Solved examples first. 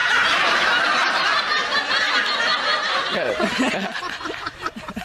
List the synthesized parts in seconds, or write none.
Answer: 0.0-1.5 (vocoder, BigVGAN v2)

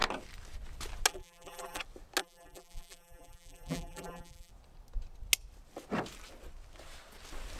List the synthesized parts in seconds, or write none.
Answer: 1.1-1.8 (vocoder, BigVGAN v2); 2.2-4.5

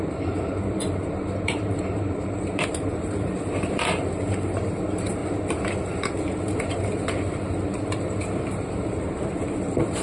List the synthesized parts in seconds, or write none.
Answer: 0.0-5.2 (vocoder, BigVGAN v2); 6.4-10.0

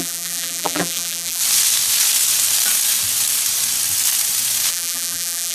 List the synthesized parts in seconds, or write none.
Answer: 0.0-1.4 (vocoder, BigVGAN v2); 4.7-5.5

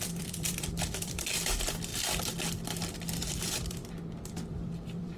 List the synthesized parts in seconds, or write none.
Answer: 0.0-1.9 (vocoder, BigVGAN v2); 3.4-3.8; 4.4-5.2

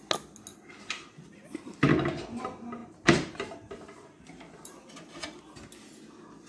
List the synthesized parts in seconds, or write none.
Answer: 0.5-1.9 (vocoder, BigVGAN v2); 2.8-4.9

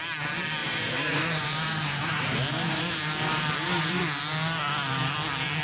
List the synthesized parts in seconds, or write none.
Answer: 0.6-4.0 (vocoder, BigVGAN v2)